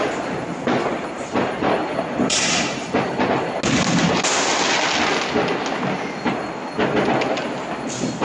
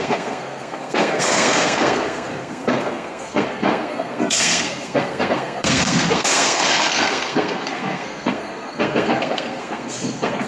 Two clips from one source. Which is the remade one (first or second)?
second